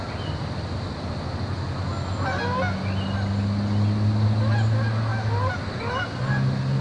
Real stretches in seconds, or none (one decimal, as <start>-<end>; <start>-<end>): 0.0-6.8